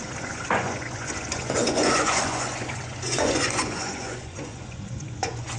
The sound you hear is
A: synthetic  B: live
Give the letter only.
A